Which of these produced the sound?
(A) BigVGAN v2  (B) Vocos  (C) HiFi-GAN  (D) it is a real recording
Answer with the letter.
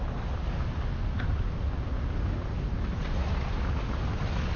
D